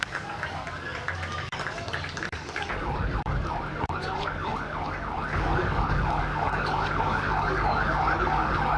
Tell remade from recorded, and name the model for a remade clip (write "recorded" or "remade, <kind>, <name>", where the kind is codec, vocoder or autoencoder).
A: remade, codec, DAC